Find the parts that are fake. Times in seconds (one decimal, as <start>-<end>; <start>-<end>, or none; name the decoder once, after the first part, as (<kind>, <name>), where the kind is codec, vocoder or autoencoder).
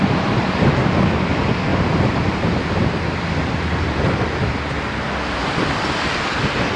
1.7-4.5 (vocoder, BigVGAN v2); 5.4-6.1